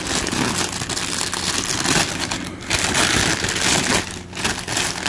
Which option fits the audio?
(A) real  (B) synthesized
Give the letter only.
A